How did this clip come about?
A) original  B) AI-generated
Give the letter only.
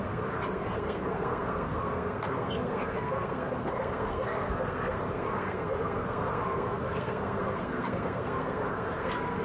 B